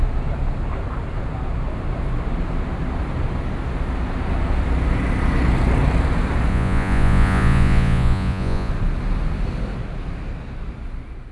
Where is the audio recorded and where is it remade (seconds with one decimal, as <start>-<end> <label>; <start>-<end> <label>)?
0.0-6.5 recorded; 6.5-8.7 remade; 8.7-11.3 recorded